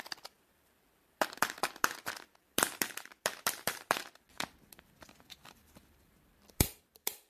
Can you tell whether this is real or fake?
fake